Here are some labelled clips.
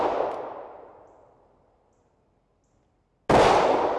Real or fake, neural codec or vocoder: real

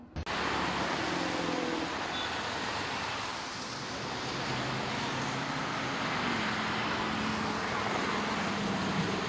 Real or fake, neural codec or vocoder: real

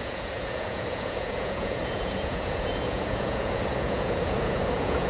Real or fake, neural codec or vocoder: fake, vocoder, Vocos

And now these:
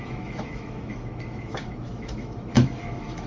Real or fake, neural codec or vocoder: fake, autoencoder, DAC-VAE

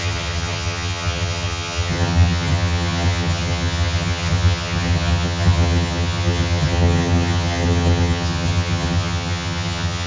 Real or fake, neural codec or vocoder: fake, vocoder, HiFi-GAN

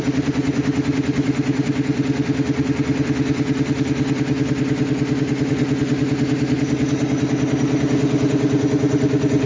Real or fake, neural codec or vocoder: real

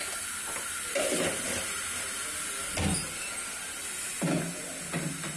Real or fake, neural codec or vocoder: real